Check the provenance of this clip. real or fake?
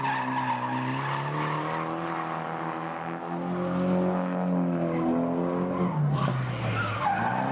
real